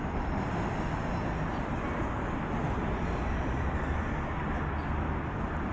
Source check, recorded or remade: recorded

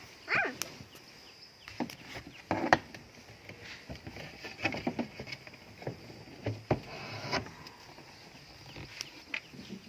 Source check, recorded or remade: recorded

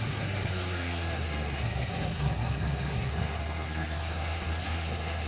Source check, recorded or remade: remade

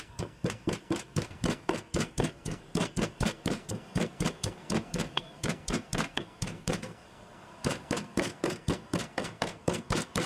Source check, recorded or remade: remade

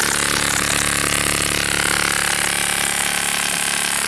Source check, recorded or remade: recorded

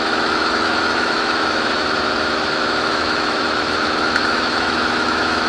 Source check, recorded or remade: remade